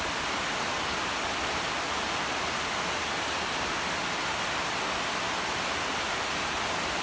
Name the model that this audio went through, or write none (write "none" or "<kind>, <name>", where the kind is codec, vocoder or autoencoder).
none